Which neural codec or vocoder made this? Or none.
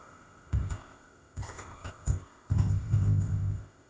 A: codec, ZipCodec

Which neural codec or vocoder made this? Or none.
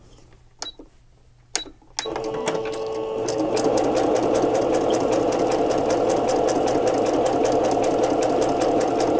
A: none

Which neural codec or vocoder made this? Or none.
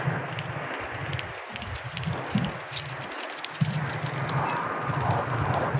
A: none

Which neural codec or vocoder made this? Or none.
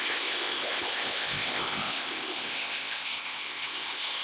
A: codec, ZipCodec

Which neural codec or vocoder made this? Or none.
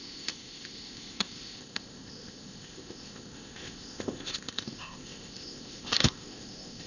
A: codec, ZipCodec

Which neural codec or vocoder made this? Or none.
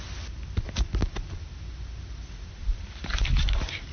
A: none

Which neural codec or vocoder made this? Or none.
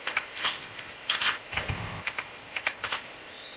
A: codec, ZipCodec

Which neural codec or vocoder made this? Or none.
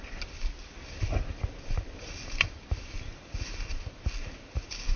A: none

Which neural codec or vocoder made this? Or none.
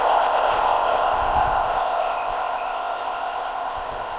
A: codec, ZipCodec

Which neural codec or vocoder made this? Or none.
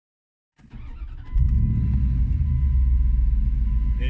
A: none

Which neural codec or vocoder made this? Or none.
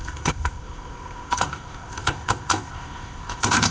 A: codec, ZipCodec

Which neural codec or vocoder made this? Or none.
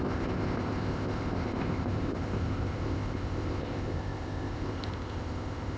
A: codec, ZipCodec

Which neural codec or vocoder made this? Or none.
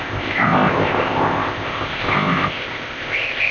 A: codec, ZipCodec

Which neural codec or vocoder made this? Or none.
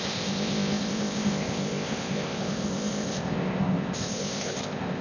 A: codec, ZipCodec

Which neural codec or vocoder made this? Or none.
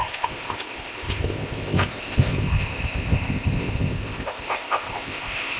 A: codec, ZipCodec